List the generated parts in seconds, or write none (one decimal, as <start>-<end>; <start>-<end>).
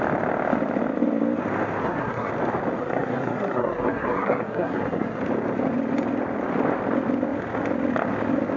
1.8-2.3; 2.8-5.2